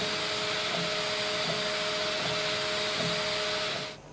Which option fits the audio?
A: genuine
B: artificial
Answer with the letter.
A